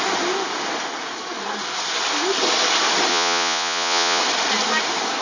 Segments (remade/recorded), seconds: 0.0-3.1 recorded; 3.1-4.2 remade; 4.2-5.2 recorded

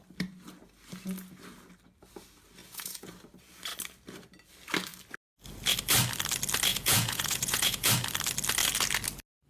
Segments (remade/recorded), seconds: 0.0-2.6 recorded; 2.6-3.1 remade; 3.1-6.7 recorded; 6.7-7.9 remade; 7.9-9.5 recorded

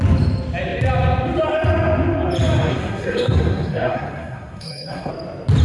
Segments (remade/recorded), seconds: 0.0-2.7 recorded; 2.7-5.1 remade; 5.1-5.6 recorded

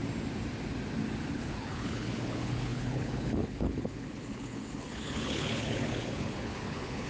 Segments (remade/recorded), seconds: 0.0-1.3 recorded; 1.3-7.1 remade